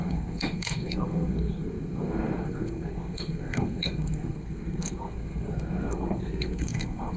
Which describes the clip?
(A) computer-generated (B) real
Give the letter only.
A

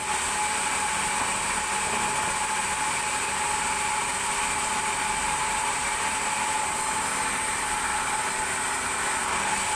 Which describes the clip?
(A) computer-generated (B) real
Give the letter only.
B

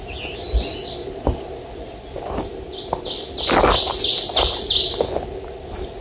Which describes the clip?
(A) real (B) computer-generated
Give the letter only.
A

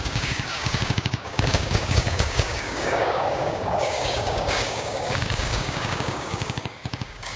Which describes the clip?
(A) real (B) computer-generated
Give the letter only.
B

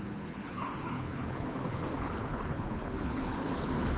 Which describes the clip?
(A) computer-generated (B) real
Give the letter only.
A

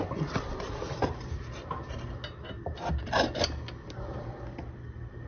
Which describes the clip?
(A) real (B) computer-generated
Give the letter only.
B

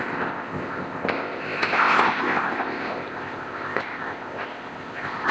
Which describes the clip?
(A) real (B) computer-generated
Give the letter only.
B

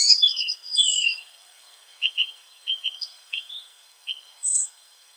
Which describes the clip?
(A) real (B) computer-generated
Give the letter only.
B